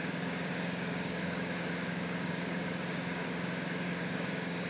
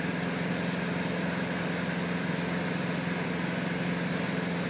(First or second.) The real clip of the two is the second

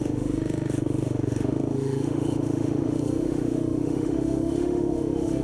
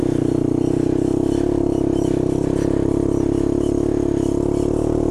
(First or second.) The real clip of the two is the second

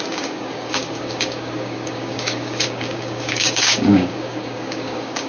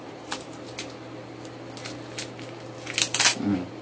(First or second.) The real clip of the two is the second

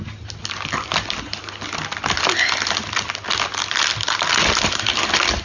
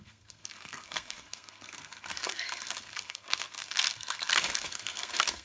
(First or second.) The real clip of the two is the first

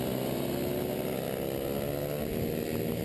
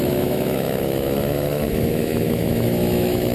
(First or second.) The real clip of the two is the first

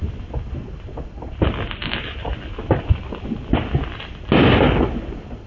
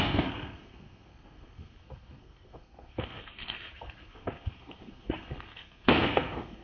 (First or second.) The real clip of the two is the first